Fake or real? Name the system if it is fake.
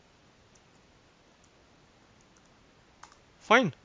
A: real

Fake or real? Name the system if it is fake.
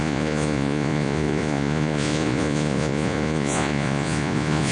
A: fake, vocoder, Vocos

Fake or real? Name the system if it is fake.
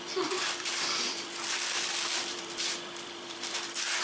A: fake, vocoder, BigVGAN v2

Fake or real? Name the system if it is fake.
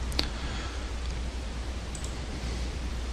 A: fake, vocoder, BigVGAN v2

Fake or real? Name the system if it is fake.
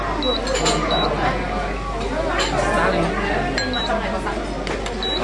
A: real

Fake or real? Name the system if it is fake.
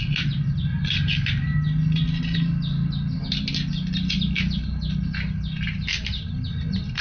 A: real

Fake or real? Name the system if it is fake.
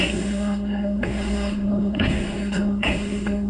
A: fake, codec, SNAC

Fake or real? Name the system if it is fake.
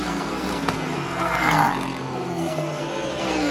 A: fake, codec, SNAC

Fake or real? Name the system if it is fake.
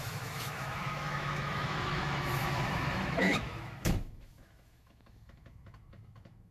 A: fake, autoencoder, DAC-VAE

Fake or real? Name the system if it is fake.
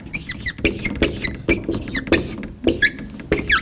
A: real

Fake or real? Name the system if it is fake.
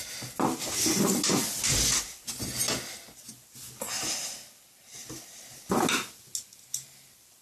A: real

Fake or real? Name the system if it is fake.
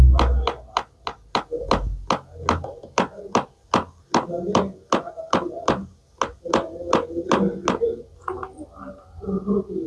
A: real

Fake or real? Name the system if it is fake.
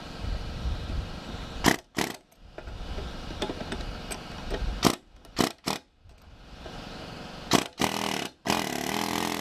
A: real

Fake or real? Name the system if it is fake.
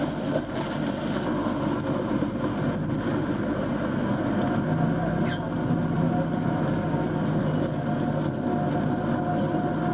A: real